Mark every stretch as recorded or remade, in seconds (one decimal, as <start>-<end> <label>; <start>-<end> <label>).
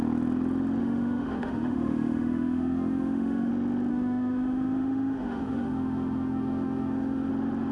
0.0-0.8 recorded; 0.8-3.5 remade; 3.5-3.9 recorded; 3.9-7.3 remade; 7.3-7.7 recorded